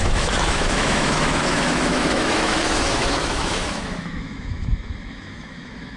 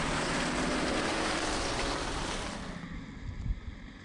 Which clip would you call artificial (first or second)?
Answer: first